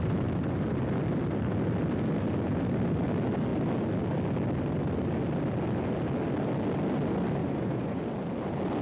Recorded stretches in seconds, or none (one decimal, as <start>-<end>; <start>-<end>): 0.0-7.4; 8.0-8.8